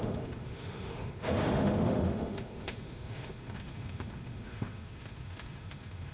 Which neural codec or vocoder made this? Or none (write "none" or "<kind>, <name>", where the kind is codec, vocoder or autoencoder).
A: autoencoder, DAC-VAE